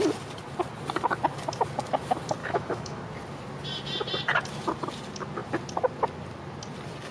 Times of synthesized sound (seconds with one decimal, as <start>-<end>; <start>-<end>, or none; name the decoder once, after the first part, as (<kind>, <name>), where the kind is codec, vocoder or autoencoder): 2.4-3.0 (autoencoder, DAC-VAE)